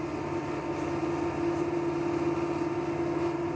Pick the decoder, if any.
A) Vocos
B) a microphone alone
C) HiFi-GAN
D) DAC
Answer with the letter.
B